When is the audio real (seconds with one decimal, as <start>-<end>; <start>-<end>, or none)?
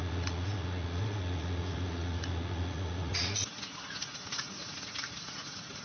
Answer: none